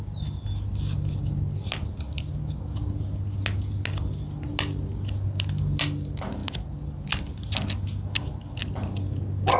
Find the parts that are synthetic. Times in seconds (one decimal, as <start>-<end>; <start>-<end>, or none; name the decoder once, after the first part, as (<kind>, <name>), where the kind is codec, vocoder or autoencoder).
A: none